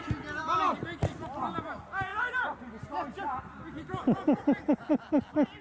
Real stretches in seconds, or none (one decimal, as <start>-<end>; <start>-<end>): 0.0-5.6